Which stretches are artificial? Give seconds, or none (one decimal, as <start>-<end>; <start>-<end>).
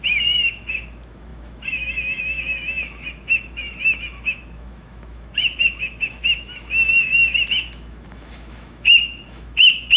0.0-10.0